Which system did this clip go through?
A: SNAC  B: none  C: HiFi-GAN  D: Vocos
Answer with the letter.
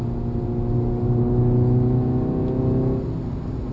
B